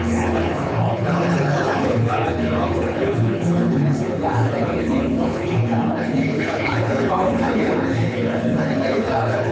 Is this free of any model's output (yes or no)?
no